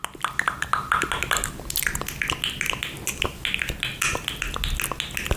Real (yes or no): yes